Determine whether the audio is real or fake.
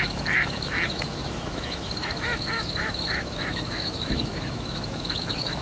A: fake